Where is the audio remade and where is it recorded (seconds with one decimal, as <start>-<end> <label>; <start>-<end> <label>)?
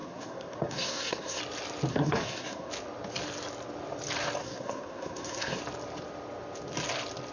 0.0-1.4 remade; 1.4-1.9 recorded; 1.9-2.7 remade; 2.7-4.4 recorded; 4.4-5.6 remade; 5.6-7.3 recorded